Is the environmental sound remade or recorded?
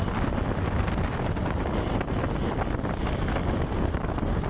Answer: recorded